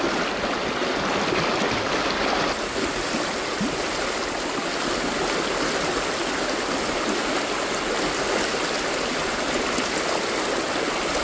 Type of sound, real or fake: real